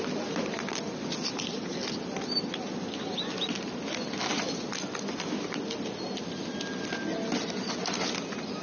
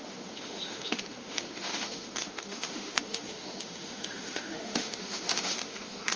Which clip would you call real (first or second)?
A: first